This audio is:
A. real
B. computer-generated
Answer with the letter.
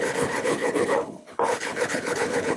B